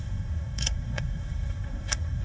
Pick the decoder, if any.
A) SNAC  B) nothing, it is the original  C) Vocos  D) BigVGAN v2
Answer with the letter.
A